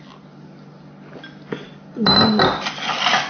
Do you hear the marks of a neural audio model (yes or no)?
no